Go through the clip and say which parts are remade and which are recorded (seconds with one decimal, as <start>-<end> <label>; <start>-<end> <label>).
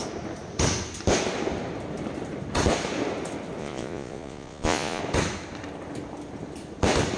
0.0-3.6 recorded; 3.6-5.0 remade; 5.0-7.2 recorded